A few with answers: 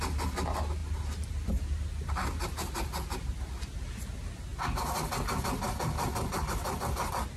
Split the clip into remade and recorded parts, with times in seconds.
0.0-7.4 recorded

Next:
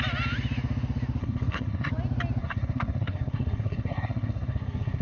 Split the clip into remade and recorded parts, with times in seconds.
0.0-1.2 recorded; 1.2-1.9 remade; 1.9-2.4 recorded; 2.4-5.0 remade

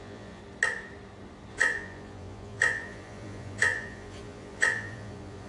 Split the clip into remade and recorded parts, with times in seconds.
0.0-0.4 remade; 0.4-1.5 recorded; 1.5-5.5 remade

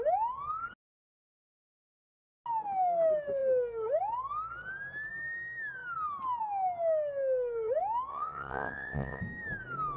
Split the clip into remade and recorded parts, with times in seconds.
0.0-8.1 recorded; 8.1-9.2 remade; 9.2-10.0 recorded